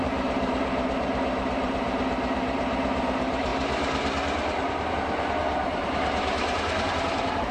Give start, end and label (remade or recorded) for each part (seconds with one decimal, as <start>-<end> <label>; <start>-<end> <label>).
0.0-3.5 remade; 3.5-4.9 recorded; 4.9-7.5 remade